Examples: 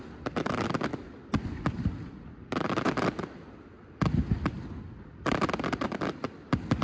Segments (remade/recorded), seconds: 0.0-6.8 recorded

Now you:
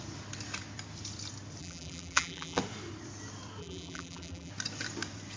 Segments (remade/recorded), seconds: 0.0-1.6 recorded; 1.6-2.6 remade; 2.6-3.6 recorded; 3.6-4.5 remade; 4.5-5.4 recorded